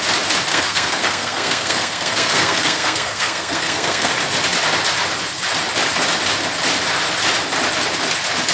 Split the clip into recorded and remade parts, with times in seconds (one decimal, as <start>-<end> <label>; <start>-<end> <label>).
0.0-0.5 recorded; 0.5-4.1 remade; 4.1-8.5 recorded